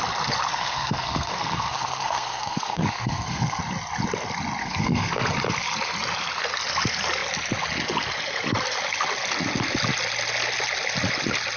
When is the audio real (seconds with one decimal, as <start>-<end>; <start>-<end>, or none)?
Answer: 0.0-0.5; 3.6-4.6; 5.1-11.6